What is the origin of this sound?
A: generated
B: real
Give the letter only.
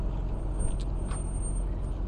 B